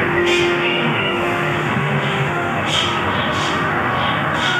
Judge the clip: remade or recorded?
remade